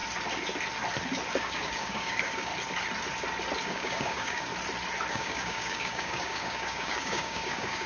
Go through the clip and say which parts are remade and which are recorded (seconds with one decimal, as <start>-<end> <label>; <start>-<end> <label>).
0.0-1.4 recorded; 1.4-2.5 remade; 2.5-3.6 recorded; 3.6-4.5 remade; 4.5-5.1 recorded; 5.1-7.9 remade